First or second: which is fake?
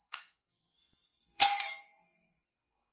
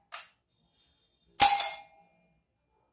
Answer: first